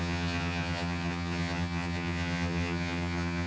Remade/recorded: remade